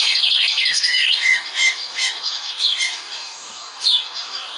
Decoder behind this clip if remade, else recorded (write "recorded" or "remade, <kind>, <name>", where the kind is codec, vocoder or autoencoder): remade, codec, DAC